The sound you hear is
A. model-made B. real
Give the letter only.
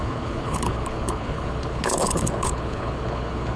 A